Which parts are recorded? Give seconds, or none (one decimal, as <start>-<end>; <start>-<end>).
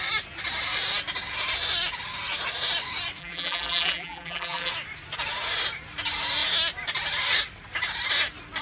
0.0-3.2; 4.7-8.6